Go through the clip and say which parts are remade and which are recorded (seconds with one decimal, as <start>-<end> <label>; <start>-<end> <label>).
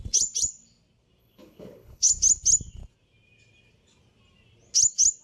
0.0-1.2 recorded; 1.2-2.1 remade; 2.1-5.2 recorded